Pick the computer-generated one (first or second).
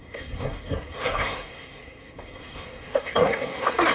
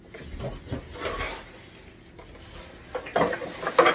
first